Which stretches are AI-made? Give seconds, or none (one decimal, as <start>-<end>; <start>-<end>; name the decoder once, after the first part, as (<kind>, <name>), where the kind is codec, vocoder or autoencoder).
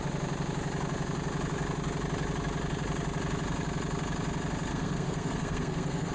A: 4.7-6.1 (codec, SNAC)